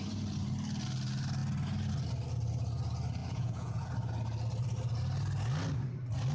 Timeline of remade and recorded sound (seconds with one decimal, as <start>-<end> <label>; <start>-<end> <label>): 0.0-3.2 recorded; 3.2-3.9 remade; 3.9-6.3 recorded